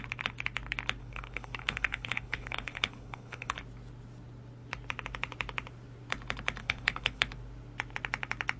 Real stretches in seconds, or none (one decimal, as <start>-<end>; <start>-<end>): 0.0-1.0; 3.6-6.6; 7.2-8.6

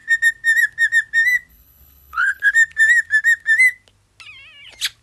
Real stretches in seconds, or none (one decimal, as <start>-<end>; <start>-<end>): 0.0-1.5; 2.5-5.0

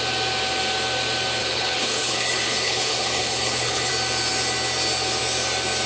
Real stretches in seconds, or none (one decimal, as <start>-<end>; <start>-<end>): 0.0-1.4; 3.9-5.9

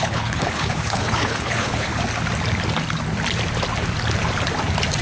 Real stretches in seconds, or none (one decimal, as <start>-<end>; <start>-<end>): 1.9-5.0